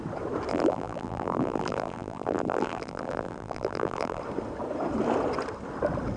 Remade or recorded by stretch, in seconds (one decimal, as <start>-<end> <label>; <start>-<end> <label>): 0.0-0.5 recorded; 0.5-4.2 remade; 4.2-6.2 recorded